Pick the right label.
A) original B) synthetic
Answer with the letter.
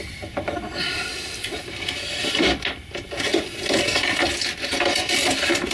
A